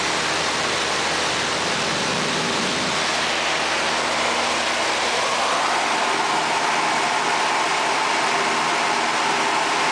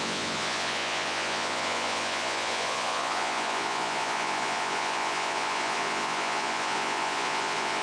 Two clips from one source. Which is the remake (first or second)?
second